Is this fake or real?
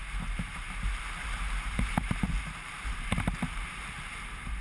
fake